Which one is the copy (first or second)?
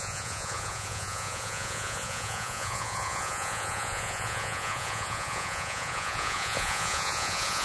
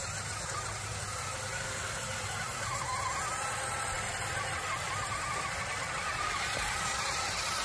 first